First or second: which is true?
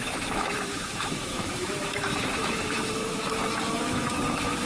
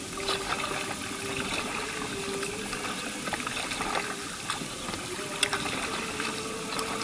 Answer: second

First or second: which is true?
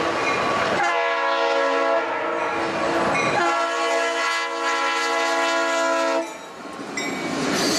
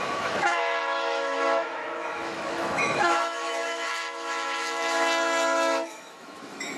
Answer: first